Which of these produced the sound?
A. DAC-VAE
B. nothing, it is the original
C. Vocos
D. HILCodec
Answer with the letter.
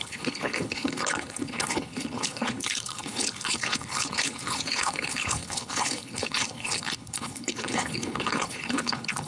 D